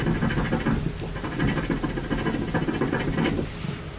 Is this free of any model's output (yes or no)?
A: yes